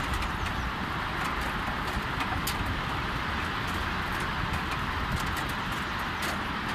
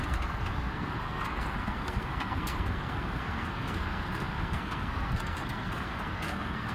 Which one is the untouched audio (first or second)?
first